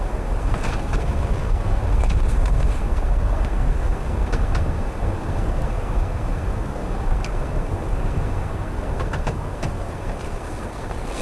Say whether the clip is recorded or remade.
remade